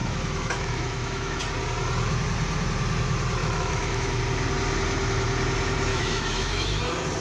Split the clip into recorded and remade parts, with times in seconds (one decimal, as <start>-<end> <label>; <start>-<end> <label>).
0.0-1.4 remade; 1.4-3.4 recorded; 3.4-4.2 remade; 4.2-5.9 recorded; 5.9-6.8 remade; 6.8-7.2 recorded